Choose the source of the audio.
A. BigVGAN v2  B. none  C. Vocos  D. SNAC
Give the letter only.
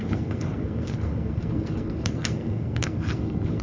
D